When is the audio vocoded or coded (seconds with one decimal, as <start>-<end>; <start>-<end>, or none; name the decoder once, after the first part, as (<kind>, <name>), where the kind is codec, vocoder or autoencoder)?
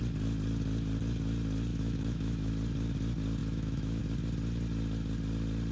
1.7-2.5 (autoencoder, DAC-VAE); 3.4-4.0